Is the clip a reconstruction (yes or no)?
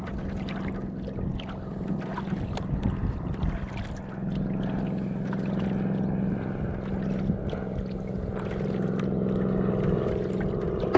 no